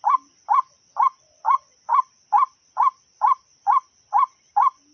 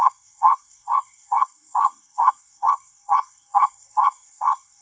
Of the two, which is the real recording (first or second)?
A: first